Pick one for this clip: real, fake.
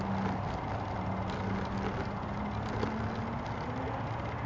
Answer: real